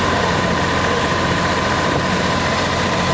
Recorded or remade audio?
remade